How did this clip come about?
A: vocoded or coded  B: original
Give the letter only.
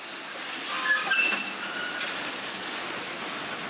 A